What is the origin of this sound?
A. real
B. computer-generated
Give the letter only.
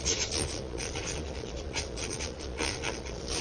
B